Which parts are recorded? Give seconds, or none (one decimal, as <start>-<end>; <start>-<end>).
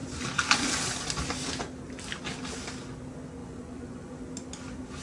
0.0-3.4; 4.2-5.0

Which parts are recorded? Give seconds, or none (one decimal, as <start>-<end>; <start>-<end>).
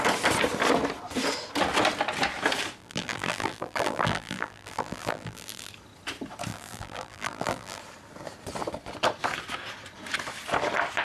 0.0-2.8; 5.7-6.5; 7.8-11.0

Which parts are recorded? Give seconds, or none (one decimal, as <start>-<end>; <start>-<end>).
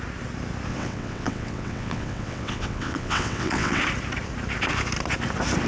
0.0-0.7; 3.8-5.7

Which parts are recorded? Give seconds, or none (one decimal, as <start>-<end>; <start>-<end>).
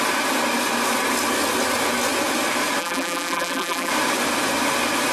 0.0-2.8; 3.9-5.1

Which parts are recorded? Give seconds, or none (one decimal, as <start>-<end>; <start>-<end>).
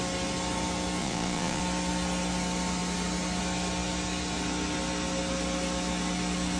0.0-1.0; 1.6-6.6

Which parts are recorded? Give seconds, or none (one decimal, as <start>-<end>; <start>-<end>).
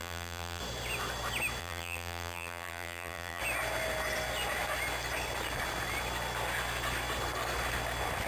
0.6-1.6; 3.4-8.3